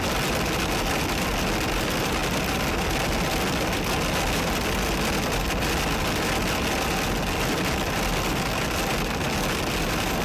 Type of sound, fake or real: real